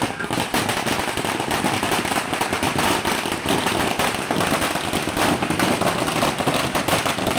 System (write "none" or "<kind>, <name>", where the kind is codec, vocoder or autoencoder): vocoder, BigVGAN v2